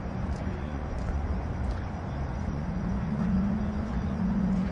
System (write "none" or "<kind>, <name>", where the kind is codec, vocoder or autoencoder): vocoder, Vocos